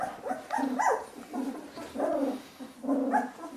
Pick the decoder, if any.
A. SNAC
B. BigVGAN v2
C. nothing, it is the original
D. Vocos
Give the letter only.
C